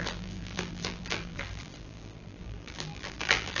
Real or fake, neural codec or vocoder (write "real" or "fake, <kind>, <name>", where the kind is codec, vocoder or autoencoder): fake, vocoder, BigVGAN v2